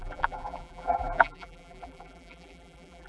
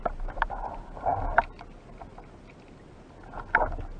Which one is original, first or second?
second